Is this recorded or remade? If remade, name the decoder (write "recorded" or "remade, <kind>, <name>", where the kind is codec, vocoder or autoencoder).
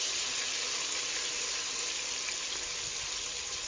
recorded